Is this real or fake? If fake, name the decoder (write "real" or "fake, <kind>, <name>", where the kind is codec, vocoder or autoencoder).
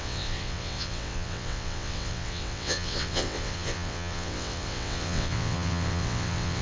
fake, vocoder, WaveNeXt